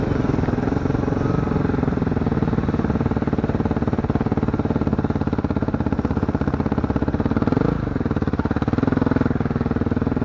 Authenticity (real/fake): real